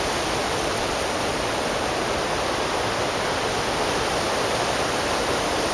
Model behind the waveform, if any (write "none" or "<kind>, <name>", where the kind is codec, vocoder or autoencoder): none